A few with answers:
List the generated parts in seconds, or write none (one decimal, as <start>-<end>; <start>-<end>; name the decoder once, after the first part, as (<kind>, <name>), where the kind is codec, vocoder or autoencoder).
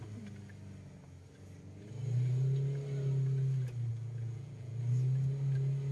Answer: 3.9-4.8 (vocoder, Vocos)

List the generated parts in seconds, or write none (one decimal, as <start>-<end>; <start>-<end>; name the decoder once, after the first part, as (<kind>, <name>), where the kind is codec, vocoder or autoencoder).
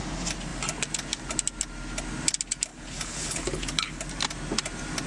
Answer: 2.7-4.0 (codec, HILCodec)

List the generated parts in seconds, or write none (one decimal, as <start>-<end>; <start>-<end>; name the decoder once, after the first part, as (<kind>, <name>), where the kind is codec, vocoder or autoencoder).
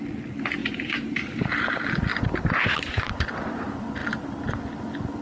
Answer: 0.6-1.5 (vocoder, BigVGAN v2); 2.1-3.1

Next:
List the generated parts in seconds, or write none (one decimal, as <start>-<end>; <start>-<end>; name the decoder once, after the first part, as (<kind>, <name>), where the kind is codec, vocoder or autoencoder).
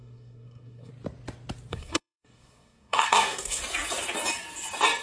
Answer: 0.0-0.9 (codec, SNAC); 1.7-3.6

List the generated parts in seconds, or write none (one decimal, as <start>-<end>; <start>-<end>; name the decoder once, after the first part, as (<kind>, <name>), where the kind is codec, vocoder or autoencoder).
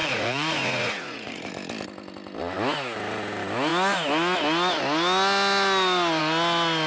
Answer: 0.0-1.5 (vocoder, Vocos)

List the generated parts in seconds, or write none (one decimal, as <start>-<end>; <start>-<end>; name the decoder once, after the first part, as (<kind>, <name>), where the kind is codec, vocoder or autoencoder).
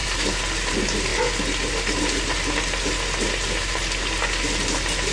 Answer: none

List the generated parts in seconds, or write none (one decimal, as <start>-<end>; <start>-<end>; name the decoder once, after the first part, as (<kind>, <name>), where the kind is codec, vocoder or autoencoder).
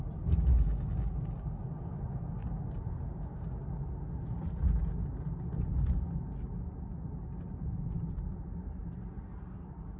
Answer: none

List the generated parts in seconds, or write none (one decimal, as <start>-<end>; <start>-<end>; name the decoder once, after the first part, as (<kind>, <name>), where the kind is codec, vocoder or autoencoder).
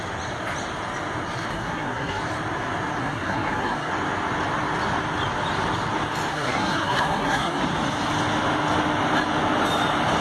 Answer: 1.5-2.2 (codec, SNAC); 3.0-3.9; 6.3-7.6